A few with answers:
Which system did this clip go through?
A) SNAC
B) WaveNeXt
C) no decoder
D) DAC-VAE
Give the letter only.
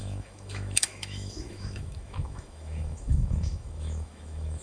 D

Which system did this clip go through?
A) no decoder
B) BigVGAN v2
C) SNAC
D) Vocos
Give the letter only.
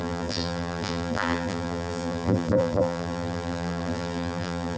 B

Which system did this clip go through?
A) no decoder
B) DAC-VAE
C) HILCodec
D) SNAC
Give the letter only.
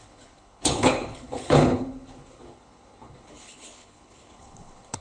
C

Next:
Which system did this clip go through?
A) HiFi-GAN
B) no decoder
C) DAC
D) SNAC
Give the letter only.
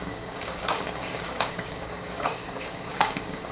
C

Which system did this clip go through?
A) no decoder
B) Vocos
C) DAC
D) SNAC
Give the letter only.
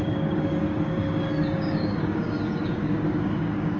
C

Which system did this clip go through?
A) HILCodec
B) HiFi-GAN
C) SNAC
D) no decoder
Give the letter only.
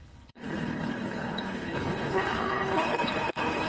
A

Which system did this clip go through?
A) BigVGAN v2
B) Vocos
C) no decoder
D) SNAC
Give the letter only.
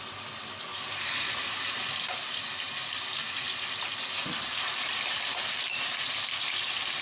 A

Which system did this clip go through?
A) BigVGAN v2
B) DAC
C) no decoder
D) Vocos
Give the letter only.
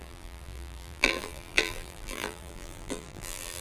A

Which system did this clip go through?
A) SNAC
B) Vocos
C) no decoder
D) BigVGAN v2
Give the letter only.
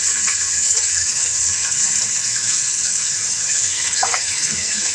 A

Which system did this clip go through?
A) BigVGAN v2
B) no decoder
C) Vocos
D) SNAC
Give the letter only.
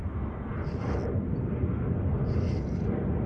B